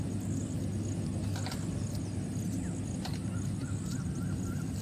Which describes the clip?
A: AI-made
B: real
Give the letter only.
B